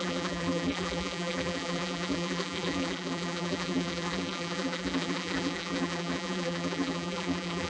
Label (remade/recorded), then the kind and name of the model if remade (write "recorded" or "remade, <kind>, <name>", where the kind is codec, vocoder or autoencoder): remade, vocoder, BigVGAN v2